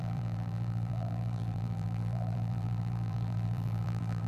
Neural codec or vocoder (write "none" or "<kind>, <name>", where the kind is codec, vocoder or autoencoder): vocoder, BigVGAN v2